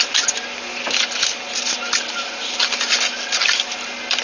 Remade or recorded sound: recorded